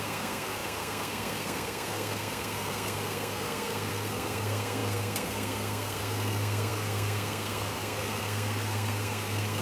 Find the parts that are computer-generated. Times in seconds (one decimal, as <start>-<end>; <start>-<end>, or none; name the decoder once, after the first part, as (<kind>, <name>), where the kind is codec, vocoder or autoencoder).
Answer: 0.0-9.6 (codec, SNAC)